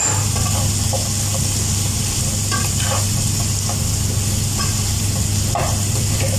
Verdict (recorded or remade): recorded